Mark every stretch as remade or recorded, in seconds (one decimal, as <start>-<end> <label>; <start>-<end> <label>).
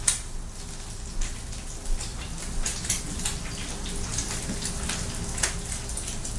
0.0-2.1 recorded; 2.1-3.0 remade; 3.0-4.1 recorded; 4.1-4.7 remade; 4.7-6.4 recorded